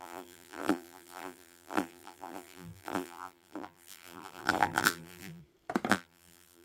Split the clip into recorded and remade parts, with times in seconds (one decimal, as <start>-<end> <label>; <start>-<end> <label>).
0.0-5.4 remade; 5.4-5.9 recorded; 5.9-6.6 remade